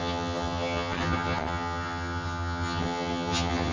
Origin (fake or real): fake